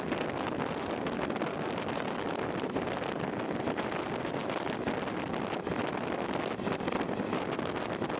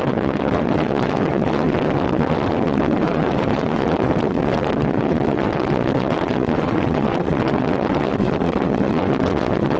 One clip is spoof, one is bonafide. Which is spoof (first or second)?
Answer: second